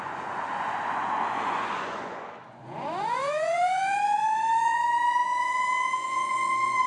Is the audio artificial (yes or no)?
yes